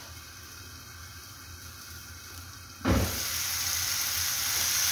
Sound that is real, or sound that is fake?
real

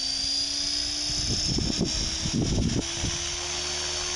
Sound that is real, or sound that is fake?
real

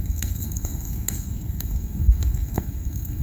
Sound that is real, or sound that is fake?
fake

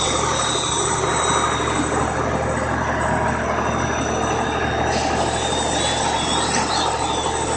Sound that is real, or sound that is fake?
real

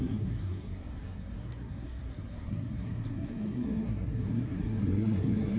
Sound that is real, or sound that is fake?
fake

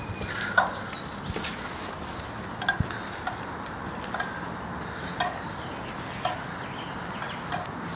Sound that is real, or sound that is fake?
real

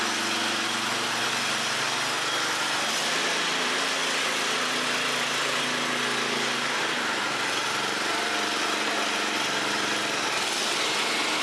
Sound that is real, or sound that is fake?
real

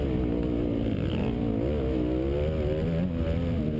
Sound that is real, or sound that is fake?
real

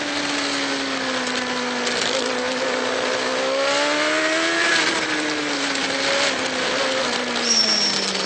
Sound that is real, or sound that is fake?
real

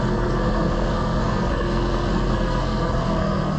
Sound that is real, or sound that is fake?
fake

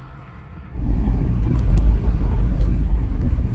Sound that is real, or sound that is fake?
fake